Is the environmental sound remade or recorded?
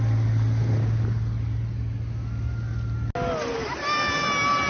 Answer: recorded